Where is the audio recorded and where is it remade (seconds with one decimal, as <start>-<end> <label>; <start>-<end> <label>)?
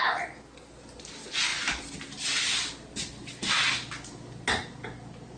0.0-5.4 recorded